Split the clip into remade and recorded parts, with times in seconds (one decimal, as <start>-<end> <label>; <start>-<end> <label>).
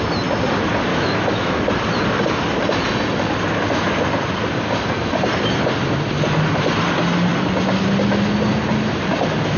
0.0-0.9 recorded; 0.9-1.6 remade; 1.6-9.6 recorded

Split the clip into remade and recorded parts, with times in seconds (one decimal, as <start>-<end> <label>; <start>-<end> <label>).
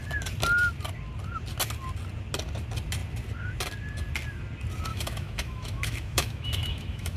0.0-4.9 recorded; 4.9-7.2 remade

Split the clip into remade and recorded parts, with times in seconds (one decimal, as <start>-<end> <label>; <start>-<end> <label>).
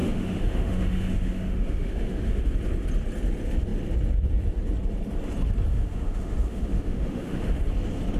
0.0-2.5 remade; 2.5-5.7 recorded; 5.7-7.6 remade; 7.6-8.2 recorded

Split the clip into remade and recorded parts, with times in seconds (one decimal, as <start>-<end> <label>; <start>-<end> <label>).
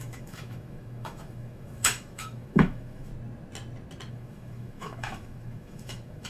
0.0-3.1 remade; 3.1-4.1 recorded; 4.1-6.3 remade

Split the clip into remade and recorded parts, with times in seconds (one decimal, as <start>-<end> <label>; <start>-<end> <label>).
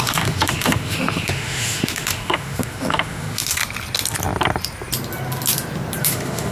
0.0-3.6 remade; 3.6-6.0 recorded; 6.0-6.5 remade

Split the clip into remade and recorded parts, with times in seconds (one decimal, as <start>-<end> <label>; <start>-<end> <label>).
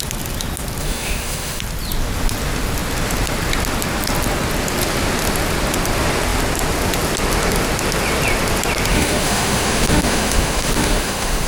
0.0-0.8 recorded; 0.8-1.6 remade; 1.6-8.9 recorded; 8.9-11.5 remade